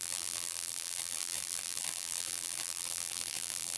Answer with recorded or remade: remade